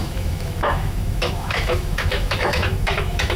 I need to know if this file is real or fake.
fake